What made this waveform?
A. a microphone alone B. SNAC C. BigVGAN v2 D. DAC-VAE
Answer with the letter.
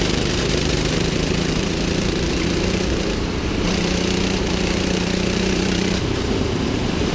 C